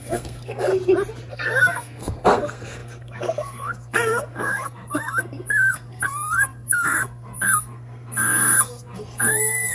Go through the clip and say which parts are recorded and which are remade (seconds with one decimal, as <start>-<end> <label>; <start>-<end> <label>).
0.0-0.7 remade; 0.7-1.3 recorded; 1.3-9.7 remade